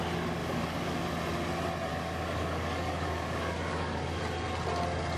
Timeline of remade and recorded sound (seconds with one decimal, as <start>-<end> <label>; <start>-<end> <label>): 0.0-0.4 recorded; 0.4-1.0 remade; 1.0-1.9 recorded; 1.9-4.2 remade; 4.2-5.2 recorded